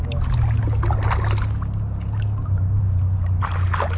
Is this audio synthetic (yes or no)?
no